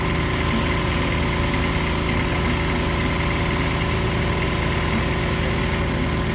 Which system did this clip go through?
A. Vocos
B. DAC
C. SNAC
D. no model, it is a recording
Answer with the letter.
D